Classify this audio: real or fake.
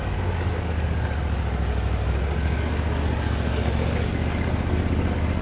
fake